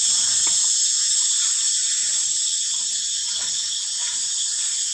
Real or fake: fake